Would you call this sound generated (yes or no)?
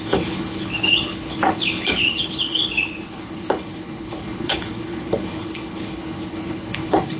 yes